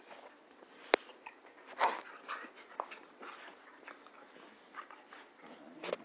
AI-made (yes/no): no